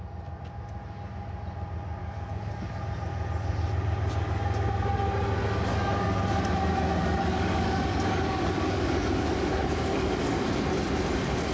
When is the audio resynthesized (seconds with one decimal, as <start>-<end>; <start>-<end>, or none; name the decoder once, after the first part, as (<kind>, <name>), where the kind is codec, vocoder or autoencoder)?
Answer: 2.0-2.8 (codec, DAC); 5.7-6.2; 7.0-10.5